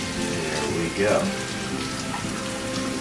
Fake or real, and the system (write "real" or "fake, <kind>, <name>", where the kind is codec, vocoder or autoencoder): real